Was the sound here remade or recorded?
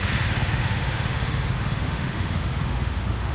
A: remade